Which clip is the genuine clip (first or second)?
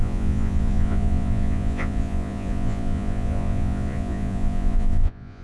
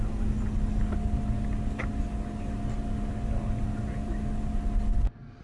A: second